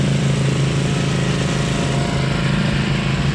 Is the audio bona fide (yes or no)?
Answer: yes